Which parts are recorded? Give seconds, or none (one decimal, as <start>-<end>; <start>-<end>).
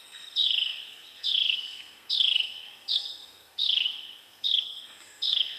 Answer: none